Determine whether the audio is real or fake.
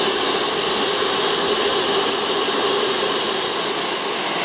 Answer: real